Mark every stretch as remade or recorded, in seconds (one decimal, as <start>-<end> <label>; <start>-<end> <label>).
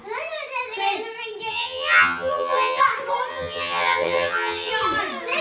0.0-1.5 recorded; 1.5-2.8 remade; 2.8-3.3 recorded; 3.3-4.7 remade; 4.7-5.4 recorded